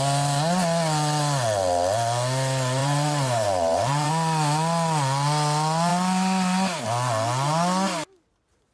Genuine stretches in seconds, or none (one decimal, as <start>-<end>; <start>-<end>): 0.0-2.8; 4.1-8.7